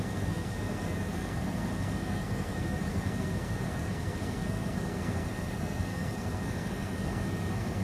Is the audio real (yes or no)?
no